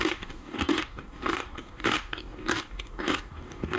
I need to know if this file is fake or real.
fake